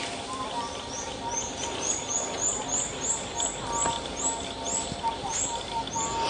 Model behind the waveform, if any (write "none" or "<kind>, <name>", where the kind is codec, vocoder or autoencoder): none